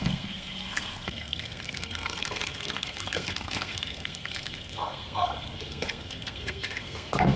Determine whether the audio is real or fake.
fake